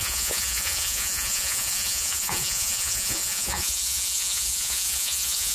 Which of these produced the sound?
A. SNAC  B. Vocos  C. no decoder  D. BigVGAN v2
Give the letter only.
B